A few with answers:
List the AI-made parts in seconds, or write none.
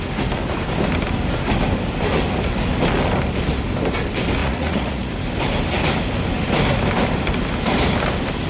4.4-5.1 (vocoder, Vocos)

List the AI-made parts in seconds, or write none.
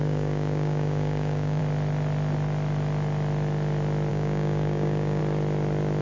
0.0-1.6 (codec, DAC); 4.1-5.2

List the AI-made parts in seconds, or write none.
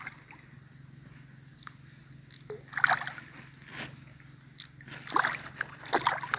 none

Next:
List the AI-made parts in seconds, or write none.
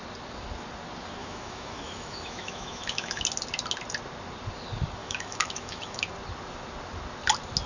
1.2-3.2 (autoencoder, DAC-VAE); 5.0-6.0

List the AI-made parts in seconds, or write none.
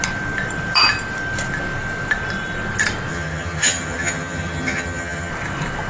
3.1-5.3 (vocoder, HiFi-GAN)